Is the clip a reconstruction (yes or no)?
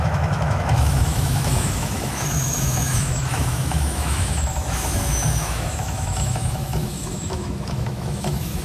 yes